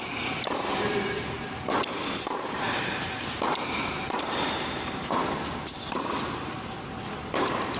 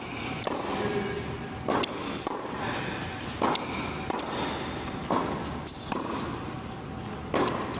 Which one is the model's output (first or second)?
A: first